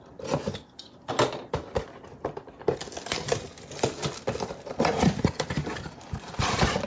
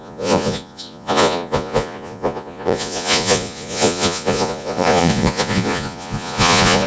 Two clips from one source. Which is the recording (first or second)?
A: first